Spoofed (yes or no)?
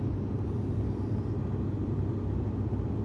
no